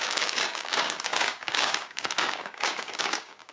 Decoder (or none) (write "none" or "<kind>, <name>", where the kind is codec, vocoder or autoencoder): codec, DAC